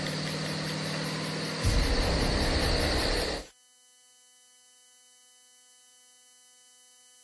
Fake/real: real